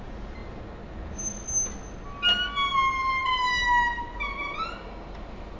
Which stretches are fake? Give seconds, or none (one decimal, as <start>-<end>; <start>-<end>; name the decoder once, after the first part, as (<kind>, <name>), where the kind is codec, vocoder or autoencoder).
none